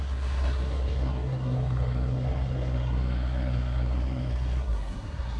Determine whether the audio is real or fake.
fake